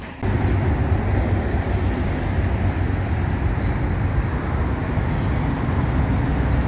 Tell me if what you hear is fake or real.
real